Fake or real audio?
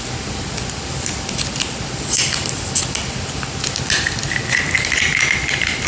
real